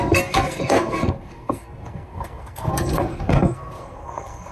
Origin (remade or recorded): remade